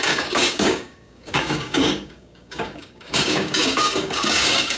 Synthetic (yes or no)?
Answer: yes